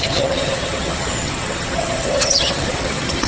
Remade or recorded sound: remade